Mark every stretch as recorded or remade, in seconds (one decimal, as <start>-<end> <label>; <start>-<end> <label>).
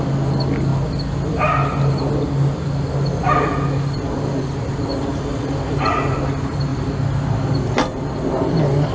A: 0.0-4.9 recorded; 4.9-6.2 remade; 6.2-8.9 recorded